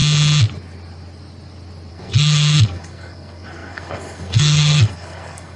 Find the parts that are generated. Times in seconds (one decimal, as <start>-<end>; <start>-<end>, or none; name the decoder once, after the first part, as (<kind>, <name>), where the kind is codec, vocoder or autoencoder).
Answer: 1.9-5.6 (codec, SNAC)